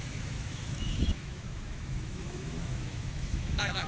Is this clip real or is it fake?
fake